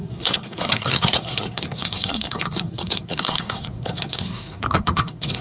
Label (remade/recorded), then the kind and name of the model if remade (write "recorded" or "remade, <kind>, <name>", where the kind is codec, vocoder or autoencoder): remade, codec, SNAC